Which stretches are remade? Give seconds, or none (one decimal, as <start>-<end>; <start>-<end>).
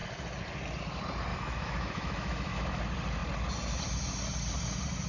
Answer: 1.3-2.8